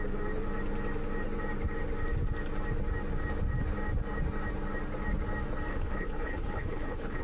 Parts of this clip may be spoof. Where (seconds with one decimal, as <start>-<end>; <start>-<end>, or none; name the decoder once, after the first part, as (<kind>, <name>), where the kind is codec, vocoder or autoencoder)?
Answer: 5.7-7.2 (codec, HILCodec)